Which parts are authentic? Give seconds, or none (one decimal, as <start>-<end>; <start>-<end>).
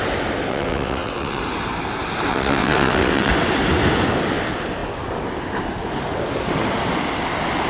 0.0-0.5; 1.4-2.3; 3.3-7.7